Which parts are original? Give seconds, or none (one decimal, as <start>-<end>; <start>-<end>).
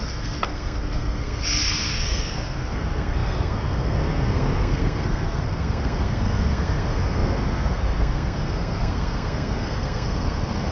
none